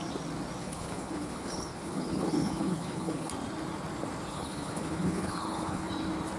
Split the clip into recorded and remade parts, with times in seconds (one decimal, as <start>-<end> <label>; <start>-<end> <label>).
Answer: 0.0-0.6 recorded; 0.6-3.3 remade; 3.3-4.3 recorded; 4.3-5.9 remade; 5.9-6.4 recorded